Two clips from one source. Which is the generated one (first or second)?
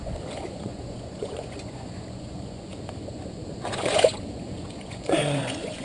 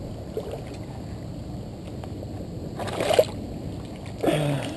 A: first